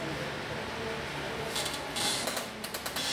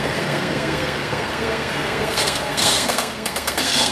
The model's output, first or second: second